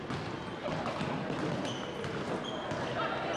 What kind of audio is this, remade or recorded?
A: recorded